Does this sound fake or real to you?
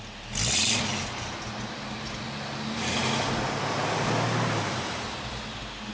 real